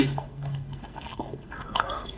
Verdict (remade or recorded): remade